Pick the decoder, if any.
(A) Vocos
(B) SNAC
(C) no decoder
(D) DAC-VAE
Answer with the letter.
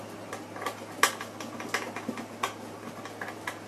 C